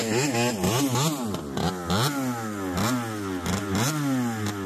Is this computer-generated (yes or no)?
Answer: no